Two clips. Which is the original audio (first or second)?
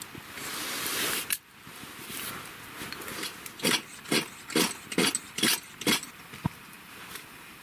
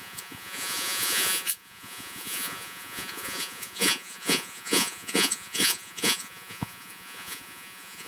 first